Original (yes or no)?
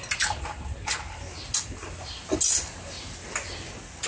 yes